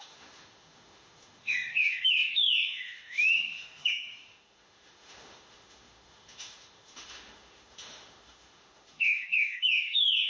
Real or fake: fake